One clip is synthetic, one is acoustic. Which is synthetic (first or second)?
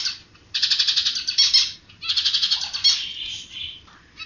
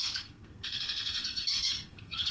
second